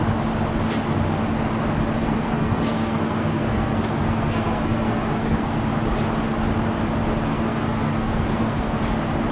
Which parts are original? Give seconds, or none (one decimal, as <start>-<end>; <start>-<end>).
0.0-2.0; 5.7-7.3; 8.8-9.3